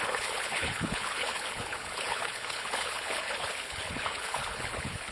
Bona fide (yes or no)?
no